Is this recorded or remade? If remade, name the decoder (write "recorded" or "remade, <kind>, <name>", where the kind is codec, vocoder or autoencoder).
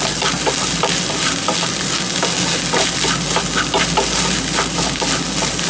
recorded